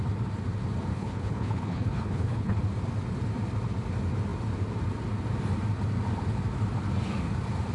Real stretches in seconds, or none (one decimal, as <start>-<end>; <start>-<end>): 0.0-0.9; 2.6-7.7